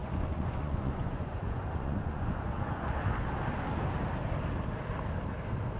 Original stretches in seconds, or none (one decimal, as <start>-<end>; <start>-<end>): 2.9-5.8